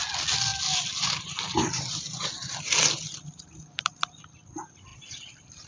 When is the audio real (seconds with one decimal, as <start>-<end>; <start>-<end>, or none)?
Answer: 0.0-0.5; 3.9-4.9